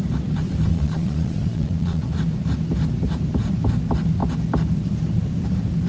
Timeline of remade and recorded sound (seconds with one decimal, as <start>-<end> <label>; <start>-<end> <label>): 0.0-0.7 recorded; 0.7-2.0 remade; 2.0-5.9 recorded

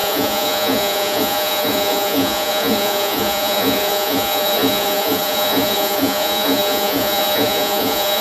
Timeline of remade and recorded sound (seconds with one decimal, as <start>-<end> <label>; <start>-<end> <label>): 0.0-8.2 remade

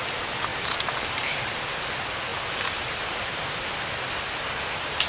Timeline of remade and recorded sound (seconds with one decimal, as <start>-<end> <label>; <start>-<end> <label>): 0.0-0.5 recorded; 0.5-1.5 remade; 1.5-2.3 recorded; 2.3-3.6 remade; 3.6-5.1 recorded

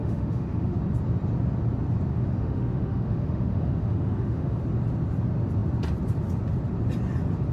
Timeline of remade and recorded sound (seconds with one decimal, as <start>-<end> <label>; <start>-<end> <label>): 0.0-0.8 remade; 0.8-2.1 recorded; 2.1-4.6 remade; 4.6-7.5 recorded

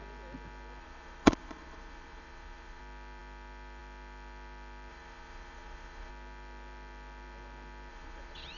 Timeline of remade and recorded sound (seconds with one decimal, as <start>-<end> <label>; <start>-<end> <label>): 0.0-0.8 recorded; 0.8-2.8 remade; 2.8-4.9 recorded; 4.9-6.1 remade; 6.1-7.9 recorded; 7.9-8.6 remade